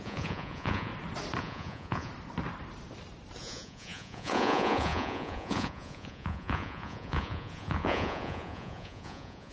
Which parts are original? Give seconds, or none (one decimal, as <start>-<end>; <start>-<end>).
0.9-1.4; 2.1-3.4